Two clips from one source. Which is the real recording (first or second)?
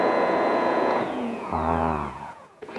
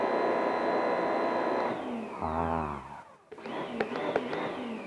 second